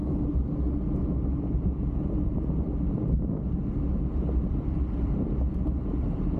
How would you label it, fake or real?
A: real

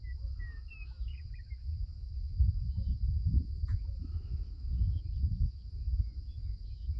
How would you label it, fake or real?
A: fake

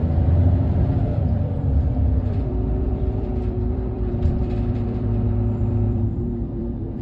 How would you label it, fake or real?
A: fake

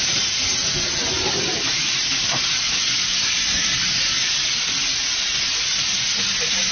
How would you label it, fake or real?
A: real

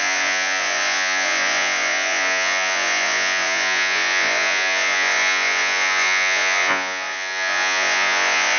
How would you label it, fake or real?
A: fake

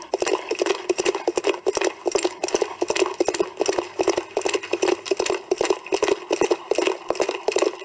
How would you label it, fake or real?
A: real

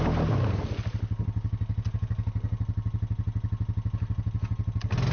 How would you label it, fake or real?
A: real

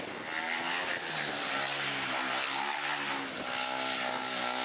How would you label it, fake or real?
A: real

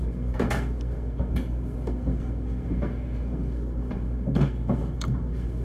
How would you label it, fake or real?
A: fake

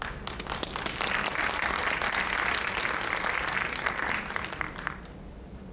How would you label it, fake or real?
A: real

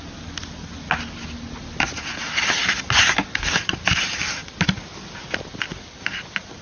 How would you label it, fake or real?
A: real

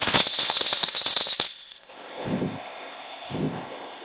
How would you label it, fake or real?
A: fake